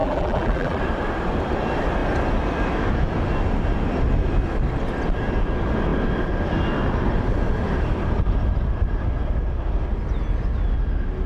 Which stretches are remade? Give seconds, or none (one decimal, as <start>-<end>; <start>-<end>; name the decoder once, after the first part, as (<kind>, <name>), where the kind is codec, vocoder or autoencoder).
0.0-0.8 (vocoder, BigVGAN v2)